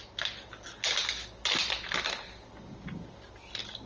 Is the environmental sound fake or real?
real